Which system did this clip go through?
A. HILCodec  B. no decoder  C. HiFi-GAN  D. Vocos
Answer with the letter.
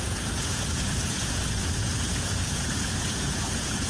D